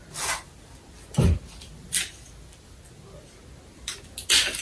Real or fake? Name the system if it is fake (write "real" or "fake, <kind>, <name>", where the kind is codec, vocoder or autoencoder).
real